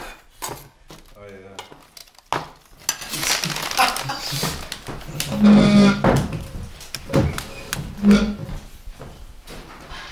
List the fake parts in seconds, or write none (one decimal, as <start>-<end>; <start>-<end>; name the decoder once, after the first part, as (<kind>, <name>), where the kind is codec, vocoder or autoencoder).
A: 8.4-9.7 (vocoder, BigVGAN v2)